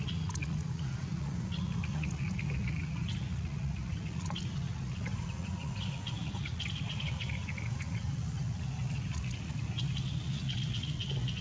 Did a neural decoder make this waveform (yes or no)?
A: yes